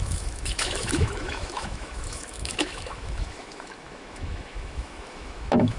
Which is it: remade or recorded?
remade